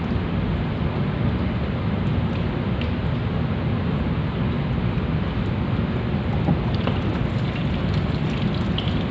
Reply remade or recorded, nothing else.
recorded